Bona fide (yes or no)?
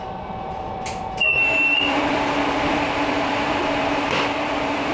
no